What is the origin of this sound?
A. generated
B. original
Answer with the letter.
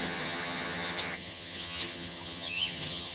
A